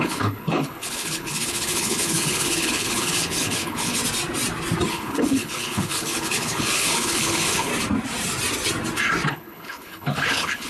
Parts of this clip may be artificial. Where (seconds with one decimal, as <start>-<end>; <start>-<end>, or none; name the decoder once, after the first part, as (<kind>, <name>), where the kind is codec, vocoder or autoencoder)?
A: 0.0-4.0 (codec, HILCodec); 4.9-7.7; 9.3-10.7